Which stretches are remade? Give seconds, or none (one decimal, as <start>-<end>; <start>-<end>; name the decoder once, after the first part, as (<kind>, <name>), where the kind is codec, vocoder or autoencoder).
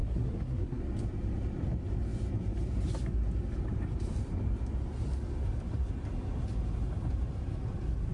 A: 0.0-0.8 (codec, SNAC)